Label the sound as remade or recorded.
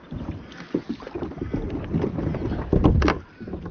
recorded